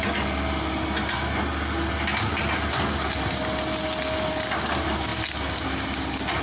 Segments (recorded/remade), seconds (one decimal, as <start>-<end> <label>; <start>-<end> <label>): 0.0-6.4 recorded